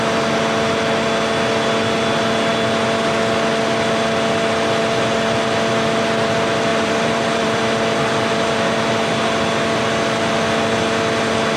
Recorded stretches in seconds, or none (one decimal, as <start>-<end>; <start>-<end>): 0.0-6.7; 7.6-11.6